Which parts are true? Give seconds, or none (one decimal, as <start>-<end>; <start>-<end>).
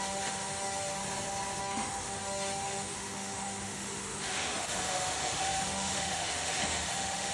1.0-1.6